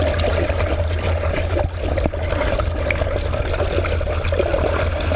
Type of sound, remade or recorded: recorded